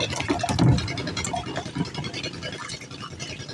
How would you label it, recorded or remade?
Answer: recorded